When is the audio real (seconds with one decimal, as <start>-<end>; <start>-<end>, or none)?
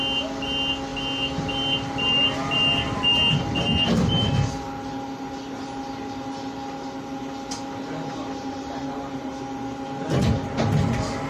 0.0-8.4; 9.4-11.3